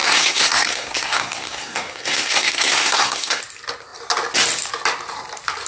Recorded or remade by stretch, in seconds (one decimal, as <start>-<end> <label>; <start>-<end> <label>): 0.0-3.4 remade; 3.4-5.7 recorded